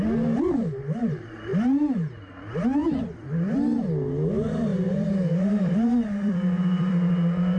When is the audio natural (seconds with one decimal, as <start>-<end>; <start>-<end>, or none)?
0.0-1.5; 2.3-4.7; 6.9-7.6